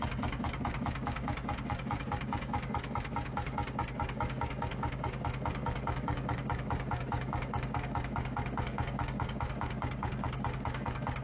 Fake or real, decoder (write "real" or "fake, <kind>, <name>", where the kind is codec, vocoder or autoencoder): fake, codec, DAC